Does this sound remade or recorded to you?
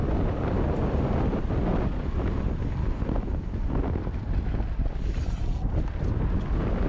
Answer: recorded